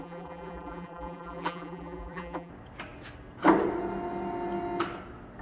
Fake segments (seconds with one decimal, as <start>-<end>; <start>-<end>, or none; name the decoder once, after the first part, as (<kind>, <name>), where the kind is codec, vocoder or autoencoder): 0.0-2.5 (vocoder, BigVGAN v2)